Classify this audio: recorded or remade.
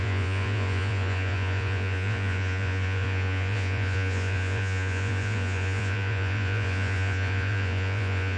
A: remade